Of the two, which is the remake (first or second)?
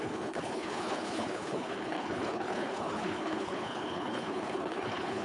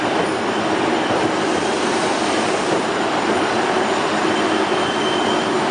first